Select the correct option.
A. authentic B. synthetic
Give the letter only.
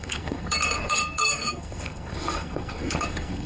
B